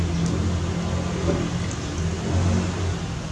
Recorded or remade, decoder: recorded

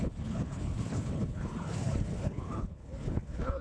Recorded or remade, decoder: remade, codec, HILCodec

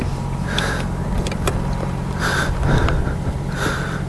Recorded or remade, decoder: remade, vocoder, BigVGAN v2